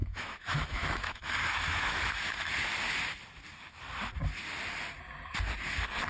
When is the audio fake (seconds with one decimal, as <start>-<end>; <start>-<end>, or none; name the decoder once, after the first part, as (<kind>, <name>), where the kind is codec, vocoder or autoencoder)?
0.0-2.5 (autoencoder, DAC-VAE)